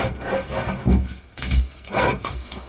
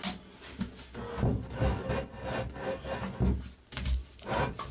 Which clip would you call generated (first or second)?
first